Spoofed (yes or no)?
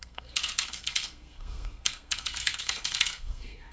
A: yes